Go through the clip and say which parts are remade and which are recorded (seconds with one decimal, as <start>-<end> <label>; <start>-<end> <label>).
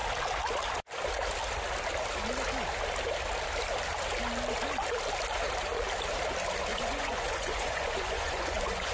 0.0-6.7 recorded; 6.7-8.9 remade